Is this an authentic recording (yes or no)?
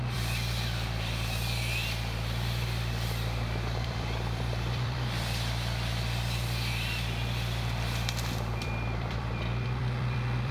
no